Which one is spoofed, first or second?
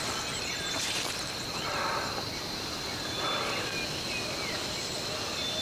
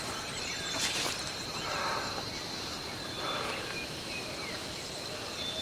second